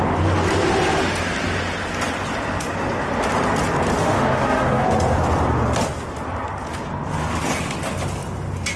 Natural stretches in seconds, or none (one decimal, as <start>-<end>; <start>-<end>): 0.0-4.0; 4.8-8.8